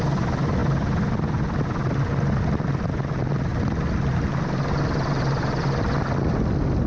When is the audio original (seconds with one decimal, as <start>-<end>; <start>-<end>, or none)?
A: 0.0-3.5; 4.1-6.9